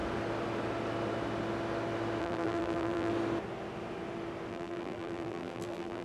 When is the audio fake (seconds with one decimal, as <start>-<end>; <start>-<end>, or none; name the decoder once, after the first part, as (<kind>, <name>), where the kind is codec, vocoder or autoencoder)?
2.2-3.1 (vocoder, BigVGAN v2); 4.5-6.0